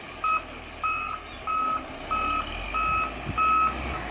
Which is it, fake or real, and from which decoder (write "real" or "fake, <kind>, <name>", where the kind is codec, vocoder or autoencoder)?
real